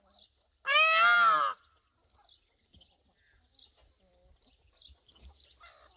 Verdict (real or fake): real